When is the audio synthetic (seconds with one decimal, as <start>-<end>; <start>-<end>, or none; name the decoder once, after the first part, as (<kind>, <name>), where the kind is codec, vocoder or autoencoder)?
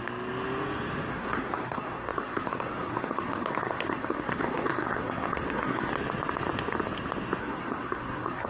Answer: 1.1-5.9 (codec, SNAC); 7.4-8.5